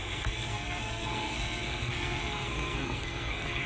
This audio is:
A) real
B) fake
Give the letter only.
B